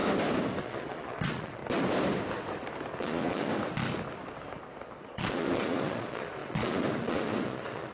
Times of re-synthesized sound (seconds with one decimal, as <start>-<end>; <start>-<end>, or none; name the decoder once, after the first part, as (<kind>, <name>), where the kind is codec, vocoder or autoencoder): 0.6-1.6 (vocoder, Vocos); 3.0-3.5; 5.0-7.9